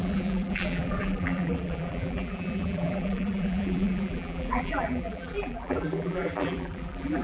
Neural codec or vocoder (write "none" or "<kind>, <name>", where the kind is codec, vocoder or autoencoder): vocoder, BigVGAN v2